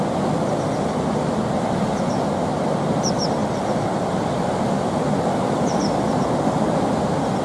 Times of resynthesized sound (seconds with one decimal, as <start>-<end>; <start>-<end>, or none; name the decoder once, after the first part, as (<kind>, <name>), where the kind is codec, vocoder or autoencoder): none